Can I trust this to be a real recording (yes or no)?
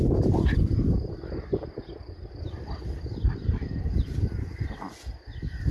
yes